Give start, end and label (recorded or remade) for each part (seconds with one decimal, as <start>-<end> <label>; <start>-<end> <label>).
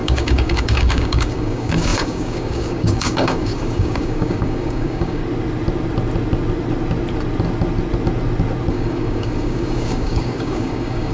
0.0-5.2 remade; 5.2-8.7 recorded; 8.7-11.1 remade